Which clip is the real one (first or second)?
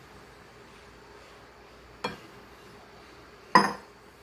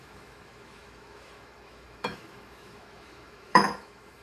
first